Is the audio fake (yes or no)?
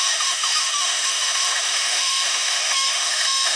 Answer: yes